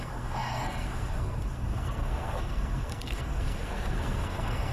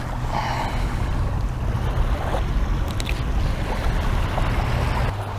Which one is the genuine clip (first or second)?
second